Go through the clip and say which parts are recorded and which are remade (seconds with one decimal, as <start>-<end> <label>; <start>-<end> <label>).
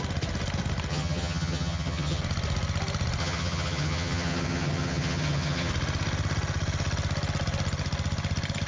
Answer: 0.0-0.9 recorded; 0.9-2.2 remade; 2.2-3.2 recorded; 3.2-5.7 remade; 5.7-8.7 recorded